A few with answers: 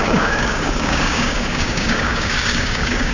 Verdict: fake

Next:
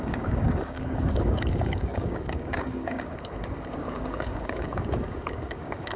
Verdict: fake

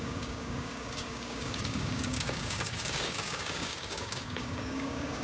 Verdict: fake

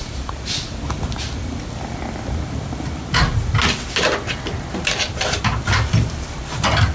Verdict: real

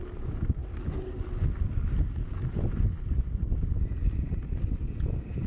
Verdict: real